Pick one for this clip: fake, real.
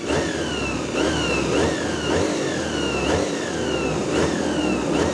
real